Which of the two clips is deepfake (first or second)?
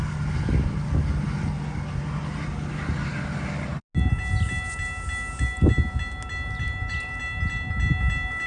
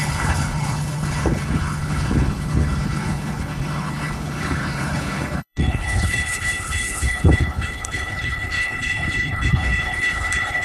second